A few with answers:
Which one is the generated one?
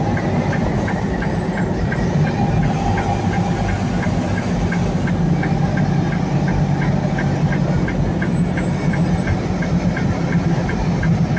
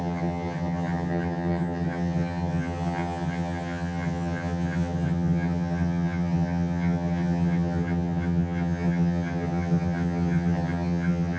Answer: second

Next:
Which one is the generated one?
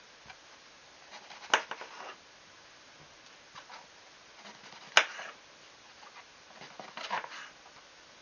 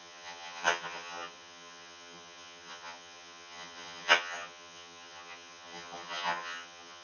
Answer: second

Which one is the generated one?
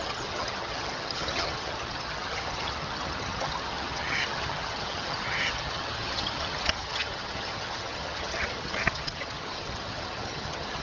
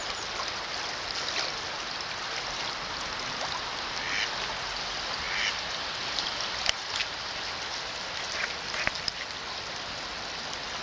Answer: first